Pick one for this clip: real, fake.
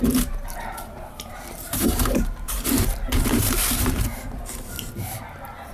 fake